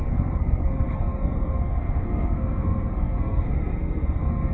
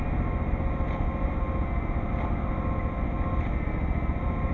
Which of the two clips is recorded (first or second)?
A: second